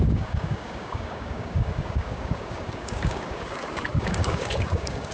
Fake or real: fake